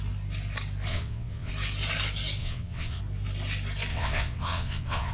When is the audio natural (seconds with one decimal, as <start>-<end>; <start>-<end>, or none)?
0.0-0.9; 1.5-2.4; 3.0-3.9